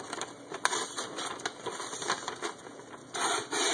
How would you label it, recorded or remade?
recorded